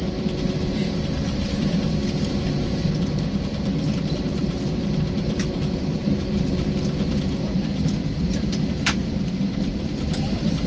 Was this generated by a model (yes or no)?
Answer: yes